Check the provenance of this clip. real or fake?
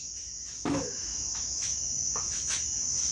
fake